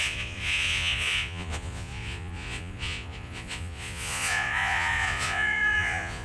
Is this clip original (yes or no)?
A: no